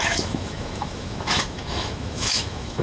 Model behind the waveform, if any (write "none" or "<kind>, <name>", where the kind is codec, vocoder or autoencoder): autoencoder, DAC-VAE